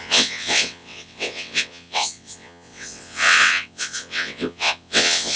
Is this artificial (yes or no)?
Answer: yes